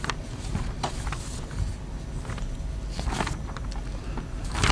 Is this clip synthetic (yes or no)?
no